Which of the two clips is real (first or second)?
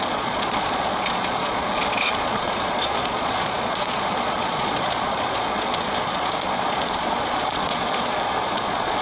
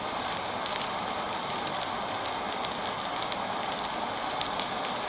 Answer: second